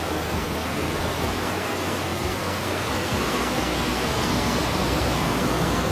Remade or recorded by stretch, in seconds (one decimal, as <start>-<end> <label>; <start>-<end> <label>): 0.0-5.9 remade